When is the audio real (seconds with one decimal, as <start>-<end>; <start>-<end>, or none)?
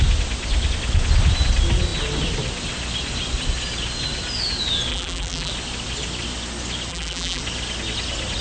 0.0-4.9; 5.5-6.9; 7.4-8.4